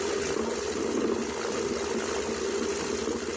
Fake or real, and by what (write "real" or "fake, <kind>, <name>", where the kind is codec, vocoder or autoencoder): real